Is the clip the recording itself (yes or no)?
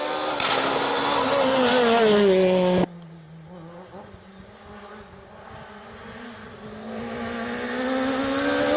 yes